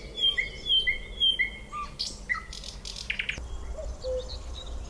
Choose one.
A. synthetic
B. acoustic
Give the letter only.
B